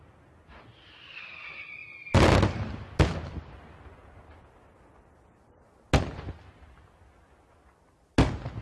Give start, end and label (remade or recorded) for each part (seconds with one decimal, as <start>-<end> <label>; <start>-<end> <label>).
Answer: 0.0-8.6 recorded